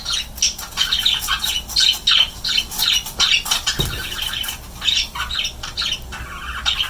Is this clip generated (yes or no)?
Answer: no